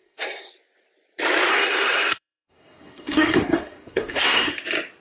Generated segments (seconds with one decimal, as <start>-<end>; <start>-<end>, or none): 0.0-0.5; 1.5-4.5